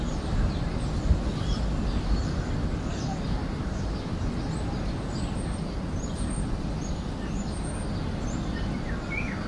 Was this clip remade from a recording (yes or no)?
no